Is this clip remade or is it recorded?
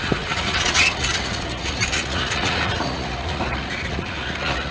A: remade